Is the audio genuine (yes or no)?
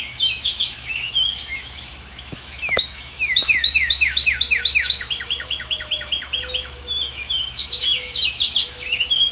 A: no